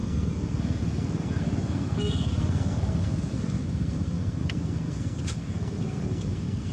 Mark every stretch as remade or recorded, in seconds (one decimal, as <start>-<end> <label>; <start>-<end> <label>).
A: 0.0-6.7 remade